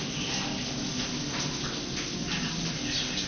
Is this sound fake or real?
real